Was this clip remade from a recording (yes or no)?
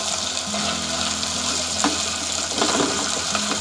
no